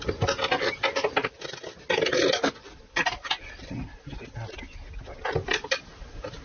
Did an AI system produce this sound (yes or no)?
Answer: no